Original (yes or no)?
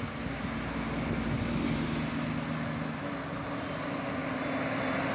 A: yes